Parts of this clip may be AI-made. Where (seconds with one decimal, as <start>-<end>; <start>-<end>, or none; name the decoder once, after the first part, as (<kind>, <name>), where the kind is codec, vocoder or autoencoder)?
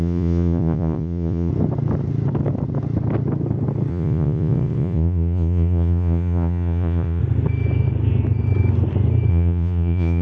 0.0-1.5 (vocoder, Vocos); 3.9-7.2; 9.3-10.2